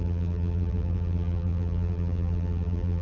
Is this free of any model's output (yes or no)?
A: no